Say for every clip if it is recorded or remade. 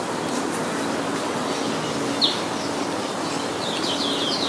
recorded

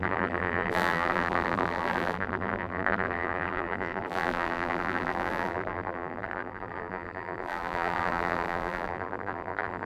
remade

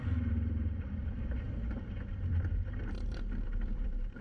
remade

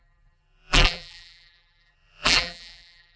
remade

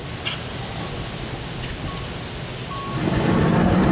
recorded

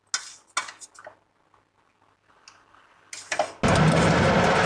recorded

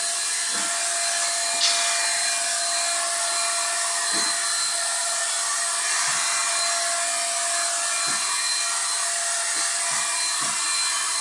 recorded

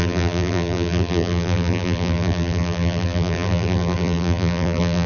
remade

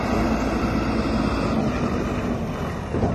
recorded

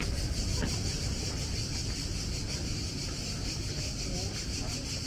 recorded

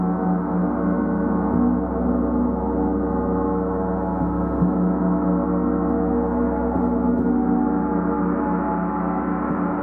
recorded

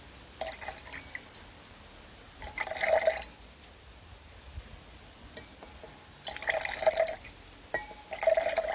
recorded